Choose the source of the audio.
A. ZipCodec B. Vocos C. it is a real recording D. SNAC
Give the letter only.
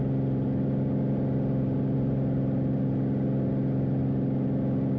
C